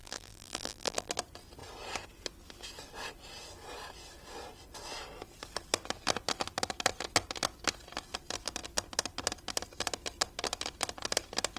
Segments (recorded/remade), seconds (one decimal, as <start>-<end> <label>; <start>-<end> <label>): 0.0-1.1 remade; 1.1-11.6 recorded